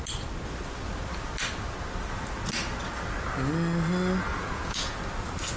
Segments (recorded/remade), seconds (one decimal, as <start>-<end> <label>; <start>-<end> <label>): 0.0-4.3 recorded; 4.3-5.0 remade; 5.0-5.6 recorded

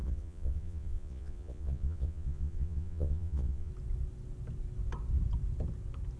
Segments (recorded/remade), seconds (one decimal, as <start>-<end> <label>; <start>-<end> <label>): 0.0-3.7 remade; 3.7-6.2 recorded

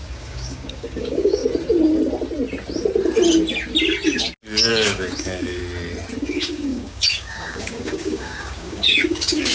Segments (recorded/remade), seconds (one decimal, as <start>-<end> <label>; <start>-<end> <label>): 0.0-1.4 remade; 1.4-4.7 recorded; 4.7-5.6 remade; 5.6-6.2 recorded; 6.2-9.5 remade